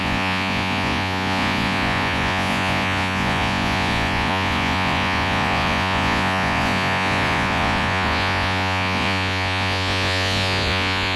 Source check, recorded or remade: remade